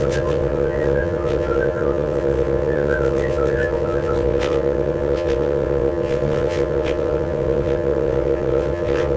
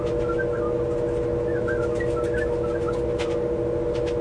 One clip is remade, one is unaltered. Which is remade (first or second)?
first